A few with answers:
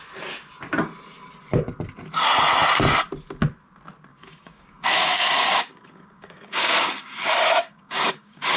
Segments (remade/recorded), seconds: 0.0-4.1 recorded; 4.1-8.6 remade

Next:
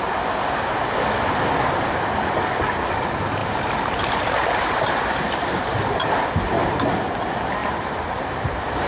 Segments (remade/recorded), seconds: 0.0-3.4 recorded; 3.4-6.9 remade; 6.9-7.6 recorded; 7.6-8.9 remade

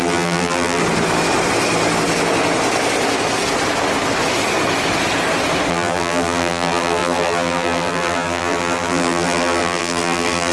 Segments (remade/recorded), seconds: 0.0-0.8 remade; 0.8-5.7 recorded; 5.7-10.5 remade

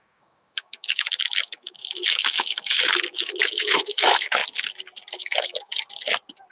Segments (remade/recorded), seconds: 0.0-4.4 remade; 4.4-5.1 recorded; 5.1-5.7 remade; 5.7-6.5 recorded

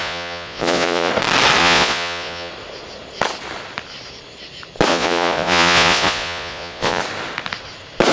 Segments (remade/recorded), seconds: 0.0-1.1 remade; 1.1-1.6 recorded; 1.6-2.5 remade; 2.5-4.9 recorded; 4.9-7.0 remade; 7.0-8.1 recorded

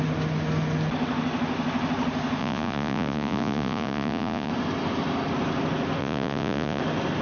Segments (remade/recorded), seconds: 0.0-2.4 recorded; 2.4-4.5 remade; 4.5-6.0 recorded; 6.0-6.8 remade; 6.8-7.2 recorded

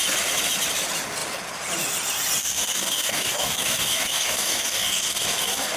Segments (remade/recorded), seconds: 0.0-2.4 recorded; 2.4-5.8 remade

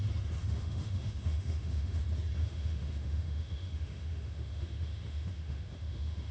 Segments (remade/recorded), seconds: 0.0-0.4 recorded; 0.4-2.0 remade; 2.0-2.4 recorded; 2.4-6.3 remade